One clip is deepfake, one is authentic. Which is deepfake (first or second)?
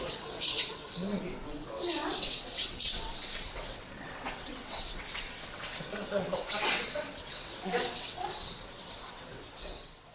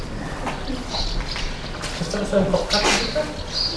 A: first